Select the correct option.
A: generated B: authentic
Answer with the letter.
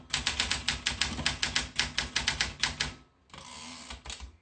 B